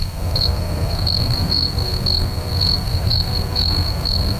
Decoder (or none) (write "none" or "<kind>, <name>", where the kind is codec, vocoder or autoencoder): codec, SNAC